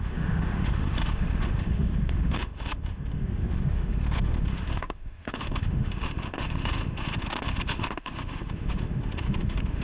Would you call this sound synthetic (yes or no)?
yes